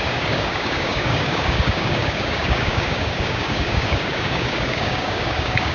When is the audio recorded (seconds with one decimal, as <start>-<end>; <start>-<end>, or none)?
none